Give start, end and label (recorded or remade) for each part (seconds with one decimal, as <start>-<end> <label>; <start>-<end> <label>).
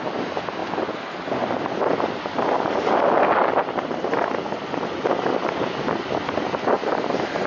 0.0-7.5 recorded